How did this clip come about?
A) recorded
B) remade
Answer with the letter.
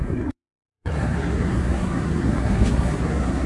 B